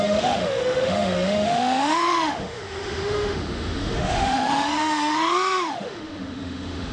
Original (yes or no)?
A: no